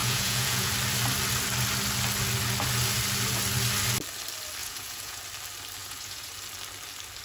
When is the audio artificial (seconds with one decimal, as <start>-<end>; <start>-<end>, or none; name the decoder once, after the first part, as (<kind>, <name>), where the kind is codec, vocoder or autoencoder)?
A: 0.0-0.7 (vocoder, Vocos); 4.6-5.2; 5.8-6.3